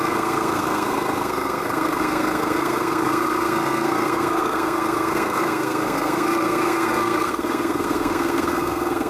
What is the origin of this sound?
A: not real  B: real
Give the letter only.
A